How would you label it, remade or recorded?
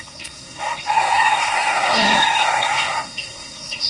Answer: remade